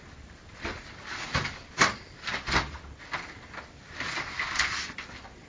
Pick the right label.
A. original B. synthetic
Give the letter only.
A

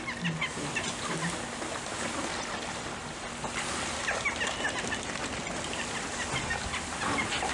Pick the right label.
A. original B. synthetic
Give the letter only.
A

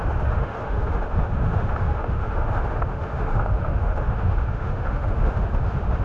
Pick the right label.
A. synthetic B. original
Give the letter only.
A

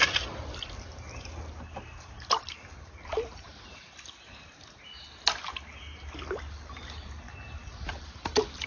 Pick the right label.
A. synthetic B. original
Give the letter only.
B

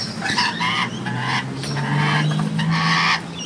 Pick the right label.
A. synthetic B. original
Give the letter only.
B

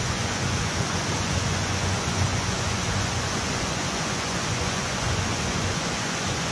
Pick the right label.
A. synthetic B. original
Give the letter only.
A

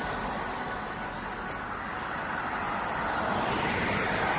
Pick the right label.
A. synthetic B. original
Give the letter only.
B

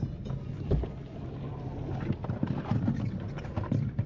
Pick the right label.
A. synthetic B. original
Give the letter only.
B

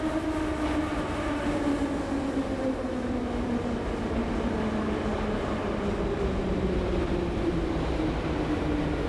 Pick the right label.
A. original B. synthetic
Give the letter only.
A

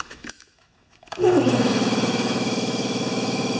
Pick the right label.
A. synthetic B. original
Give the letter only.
A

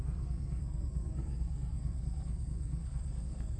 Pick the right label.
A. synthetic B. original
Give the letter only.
A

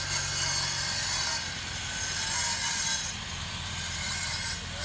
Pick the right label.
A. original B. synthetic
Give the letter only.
A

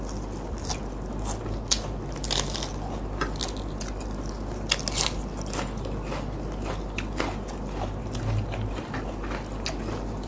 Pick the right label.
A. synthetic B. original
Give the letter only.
B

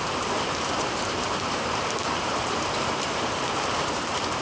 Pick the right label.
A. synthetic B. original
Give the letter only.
A